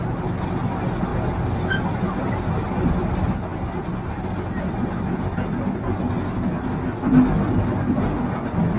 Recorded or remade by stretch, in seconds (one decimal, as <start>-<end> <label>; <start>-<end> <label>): 0.0-8.8 recorded